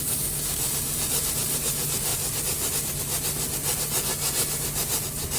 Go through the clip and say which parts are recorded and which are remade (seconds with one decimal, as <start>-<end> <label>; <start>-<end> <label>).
0.0-4.1 recorded; 4.1-4.6 remade; 4.6-5.4 recorded

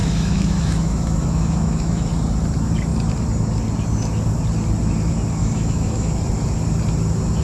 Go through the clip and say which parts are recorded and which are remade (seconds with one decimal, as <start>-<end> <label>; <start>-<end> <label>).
0.0-2.1 remade; 2.1-5.4 recorded; 5.4-6.1 remade; 6.1-7.4 recorded

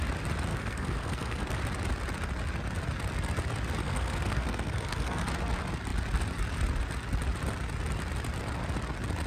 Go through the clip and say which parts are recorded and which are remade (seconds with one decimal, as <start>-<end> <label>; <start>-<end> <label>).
0.0-0.5 recorded; 0.5-1.6 remade; 1.6-3.8 recorded; 3.8-5.3 remade; 5.3-9.3 recorded

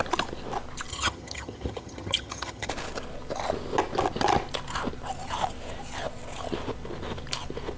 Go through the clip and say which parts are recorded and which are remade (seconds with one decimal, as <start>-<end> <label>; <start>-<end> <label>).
0.0-0.9 recorded; 0.9-2.7 remade; 2.7-7.8 recorded

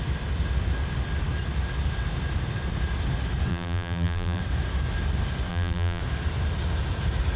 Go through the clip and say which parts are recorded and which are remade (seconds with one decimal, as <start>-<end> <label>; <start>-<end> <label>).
0.0-3.5 recorded; 3.5-4.4 remade; 4.4-5.5 recorded; 5.5-6.0 remade; 6.0-7.4 recorded